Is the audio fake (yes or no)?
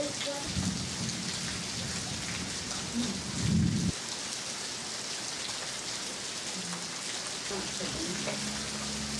no